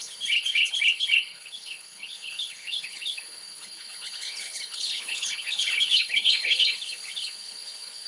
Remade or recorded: remade